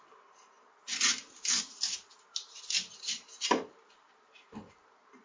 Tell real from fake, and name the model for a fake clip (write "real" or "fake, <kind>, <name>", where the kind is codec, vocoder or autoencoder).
real